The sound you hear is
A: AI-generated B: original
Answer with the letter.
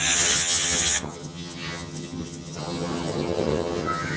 A